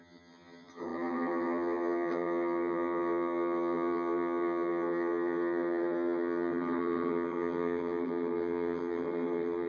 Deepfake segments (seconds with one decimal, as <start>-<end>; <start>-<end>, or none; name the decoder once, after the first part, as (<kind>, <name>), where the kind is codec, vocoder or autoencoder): 0.0-9.7 (vocoder, HiFi-GAN)